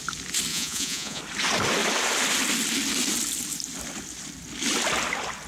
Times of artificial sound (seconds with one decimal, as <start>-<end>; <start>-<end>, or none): 0.5-1.2